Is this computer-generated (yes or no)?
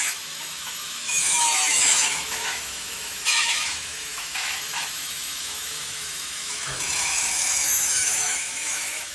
yes